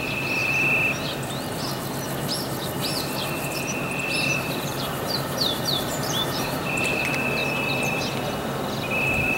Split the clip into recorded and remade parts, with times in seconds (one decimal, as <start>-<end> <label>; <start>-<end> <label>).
0.0-4.3 recorded; 4.3-7.0 remade; 7.0-9.4 recorded